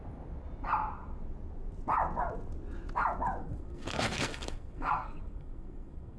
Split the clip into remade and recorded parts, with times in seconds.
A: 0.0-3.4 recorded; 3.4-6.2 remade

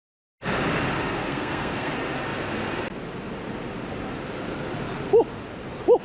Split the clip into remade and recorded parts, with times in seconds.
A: 0.0-1.1 recorded; 1.1-1.9 remade; 1.9-6.0 recorded

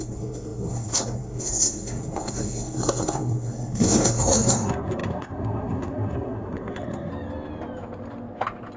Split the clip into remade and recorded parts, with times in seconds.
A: 0.0-7.1 remade; 7.1-8.8 recorded

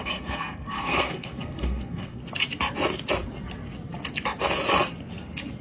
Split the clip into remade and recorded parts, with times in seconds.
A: 0.0-2.2 remade; 2.2-5.6 recorded

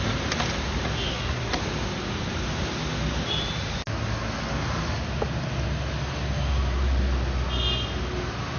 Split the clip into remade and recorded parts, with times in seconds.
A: 0.0-1.1 recorded; 1.1-1.6 remade; 1.6-8.6 recorded

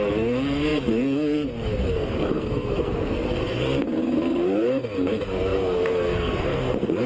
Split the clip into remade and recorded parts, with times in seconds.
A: 0.0-7.1 remade